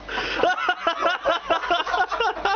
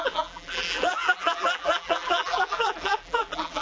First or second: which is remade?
second